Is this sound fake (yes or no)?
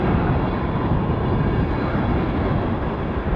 no